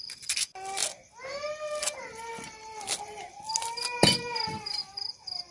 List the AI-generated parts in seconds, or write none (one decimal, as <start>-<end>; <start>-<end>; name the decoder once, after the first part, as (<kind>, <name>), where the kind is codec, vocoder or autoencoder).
0.0-0.8 (vocoder, BigVGAN v2); 2.0-2.7; 4.2-5.5